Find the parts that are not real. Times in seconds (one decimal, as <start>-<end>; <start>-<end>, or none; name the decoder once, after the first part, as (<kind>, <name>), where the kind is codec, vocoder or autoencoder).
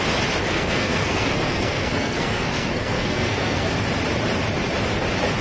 0.5-3.7 (codec, SNAC)